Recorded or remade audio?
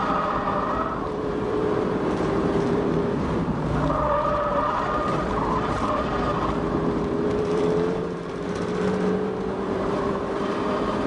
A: remade